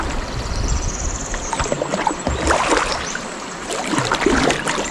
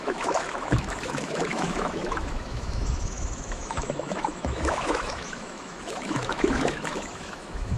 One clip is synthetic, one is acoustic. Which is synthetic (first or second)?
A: second